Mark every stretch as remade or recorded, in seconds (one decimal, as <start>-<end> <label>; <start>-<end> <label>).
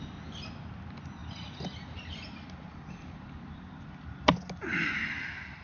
0.0-5.6 recorded